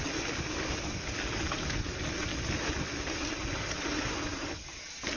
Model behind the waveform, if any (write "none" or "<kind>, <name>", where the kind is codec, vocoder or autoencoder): none